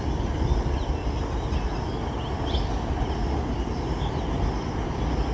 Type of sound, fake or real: real